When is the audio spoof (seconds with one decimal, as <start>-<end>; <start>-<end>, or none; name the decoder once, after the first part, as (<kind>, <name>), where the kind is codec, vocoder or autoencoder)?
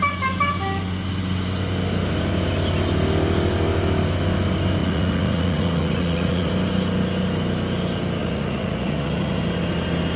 4.8-6.5 (vocoder, Vocos); 8.2-9.4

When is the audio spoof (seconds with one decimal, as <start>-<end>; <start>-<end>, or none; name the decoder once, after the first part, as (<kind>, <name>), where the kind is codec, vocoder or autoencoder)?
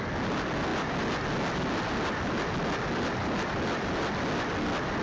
none